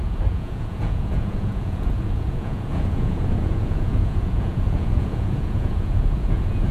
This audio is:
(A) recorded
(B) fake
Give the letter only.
B